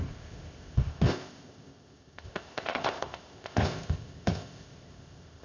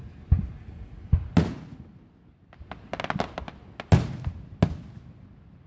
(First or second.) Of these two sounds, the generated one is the first